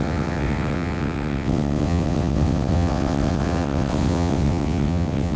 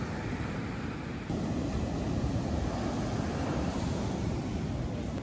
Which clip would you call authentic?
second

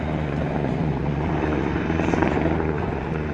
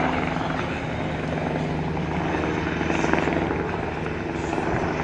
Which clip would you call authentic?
second